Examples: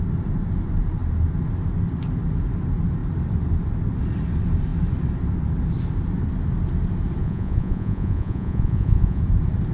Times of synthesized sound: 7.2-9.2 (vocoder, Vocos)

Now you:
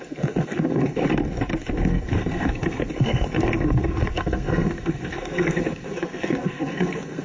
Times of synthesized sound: 0.0-1.0 (codec, SNAC); 1.7-7.2

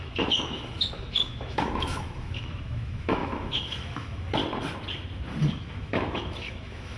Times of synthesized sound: 0.0-4.4 (autoencoder, DAC-VAE); 5.5-7.0

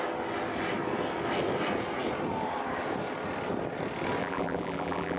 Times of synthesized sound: 4.2-5.2 (vocoder, BigVGAN v2)

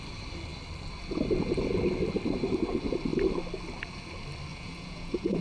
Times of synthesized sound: 4.5-5.4 (vocoder, Vocos)

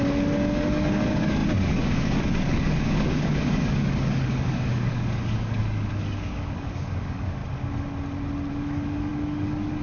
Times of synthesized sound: 0.0-7.4 (codec, DAC); 8.5-9.8

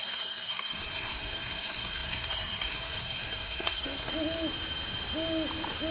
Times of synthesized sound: 0.0-4.1 (codec, SNAC)

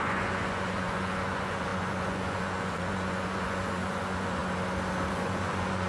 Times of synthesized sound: 0.0-4.4 (vocoder, Vocos); 5.1-5.9